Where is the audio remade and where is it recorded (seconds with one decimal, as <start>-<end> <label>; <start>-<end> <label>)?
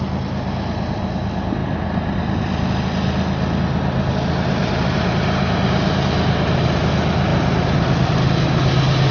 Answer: 0.0-4.6 recorded; 4.6-6.8 remade; 6.8-9.1 recorded